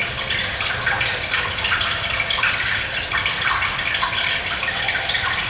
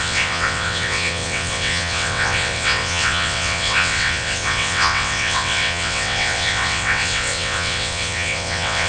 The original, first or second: first